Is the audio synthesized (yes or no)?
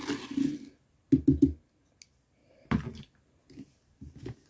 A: no